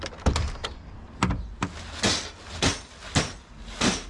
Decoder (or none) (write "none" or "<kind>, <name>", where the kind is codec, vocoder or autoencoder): none